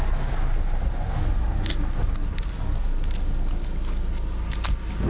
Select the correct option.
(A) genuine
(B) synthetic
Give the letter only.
A